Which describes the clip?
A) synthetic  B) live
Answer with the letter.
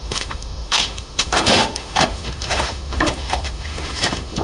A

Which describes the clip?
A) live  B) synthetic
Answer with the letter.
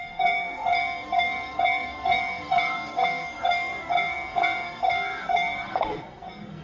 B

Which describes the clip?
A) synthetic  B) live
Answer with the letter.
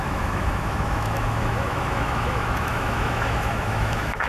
A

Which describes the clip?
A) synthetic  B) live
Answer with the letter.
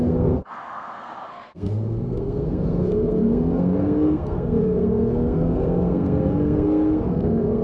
A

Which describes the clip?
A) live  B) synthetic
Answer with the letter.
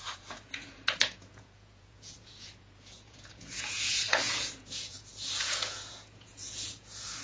B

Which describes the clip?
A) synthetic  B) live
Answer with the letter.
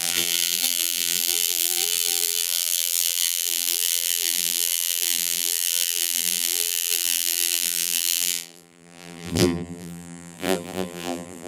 A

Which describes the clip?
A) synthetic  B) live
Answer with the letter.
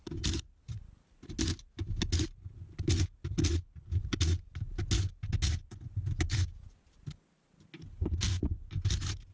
B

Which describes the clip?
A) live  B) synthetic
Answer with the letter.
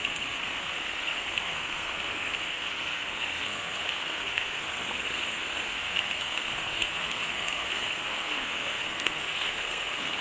B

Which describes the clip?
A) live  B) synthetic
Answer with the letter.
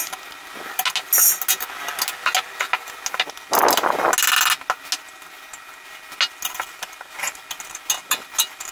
A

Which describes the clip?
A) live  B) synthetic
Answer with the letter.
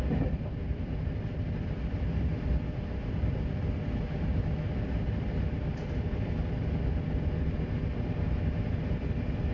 A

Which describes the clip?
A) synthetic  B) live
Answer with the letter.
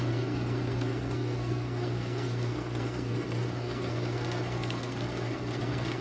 A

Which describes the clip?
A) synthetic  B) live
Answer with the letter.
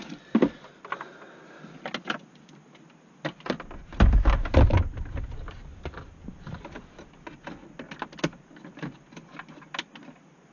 B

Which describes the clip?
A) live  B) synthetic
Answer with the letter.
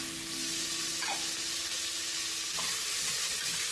A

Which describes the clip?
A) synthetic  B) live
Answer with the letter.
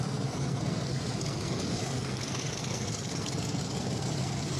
A